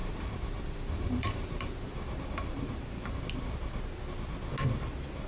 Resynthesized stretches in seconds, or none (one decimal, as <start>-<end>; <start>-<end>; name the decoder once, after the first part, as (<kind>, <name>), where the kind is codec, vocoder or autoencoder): 0.0-3.2 (vocoder, BigVGAN v2)

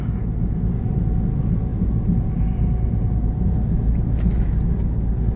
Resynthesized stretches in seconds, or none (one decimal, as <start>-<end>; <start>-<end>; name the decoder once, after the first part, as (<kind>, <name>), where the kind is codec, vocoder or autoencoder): 1.7-3.6 (vocoder, BigVGAN v2)